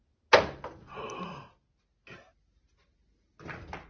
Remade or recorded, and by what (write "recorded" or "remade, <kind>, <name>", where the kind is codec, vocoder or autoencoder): recorded